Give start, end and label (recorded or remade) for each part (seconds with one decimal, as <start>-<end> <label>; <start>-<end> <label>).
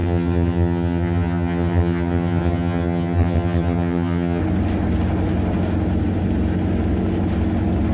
0.0-4.4 remade; 4.4-7.9 recorded